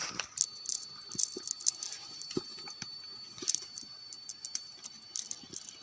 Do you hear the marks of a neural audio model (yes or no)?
yes